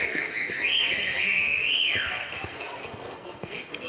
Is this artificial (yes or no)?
yes